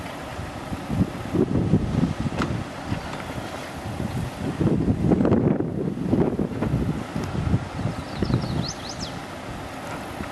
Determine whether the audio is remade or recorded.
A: recorded